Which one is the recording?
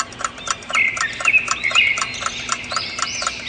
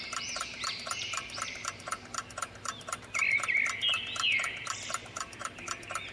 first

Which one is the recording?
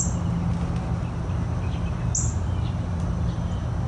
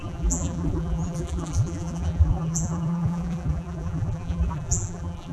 first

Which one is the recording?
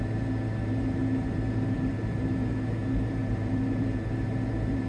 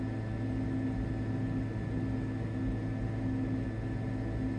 second